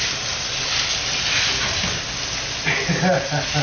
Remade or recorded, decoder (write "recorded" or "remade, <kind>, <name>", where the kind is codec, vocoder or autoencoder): recorded